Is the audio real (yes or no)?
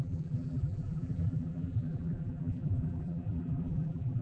no